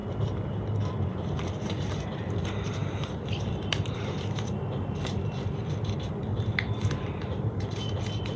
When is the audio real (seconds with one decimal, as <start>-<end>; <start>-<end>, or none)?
0.0-2.8; 5.8-6.3; 7.0-8.4